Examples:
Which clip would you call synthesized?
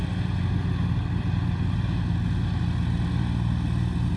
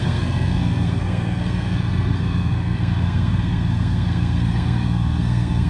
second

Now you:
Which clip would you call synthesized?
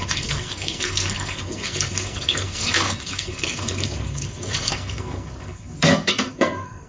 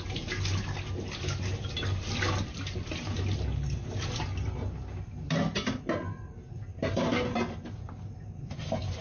first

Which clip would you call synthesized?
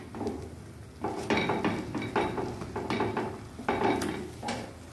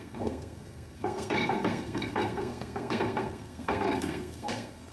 second